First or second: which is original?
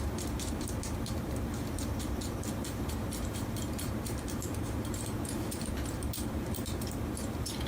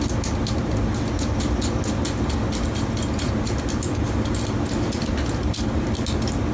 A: second